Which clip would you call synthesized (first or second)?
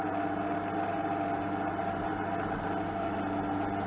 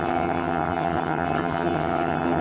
second